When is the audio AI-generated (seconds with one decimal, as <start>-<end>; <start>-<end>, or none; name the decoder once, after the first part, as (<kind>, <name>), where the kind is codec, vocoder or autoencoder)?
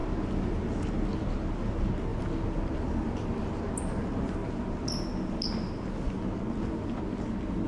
none